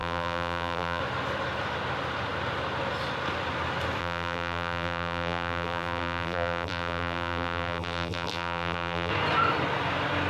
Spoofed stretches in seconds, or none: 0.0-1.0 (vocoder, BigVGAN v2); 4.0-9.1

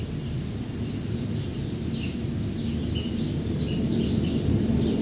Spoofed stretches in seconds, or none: none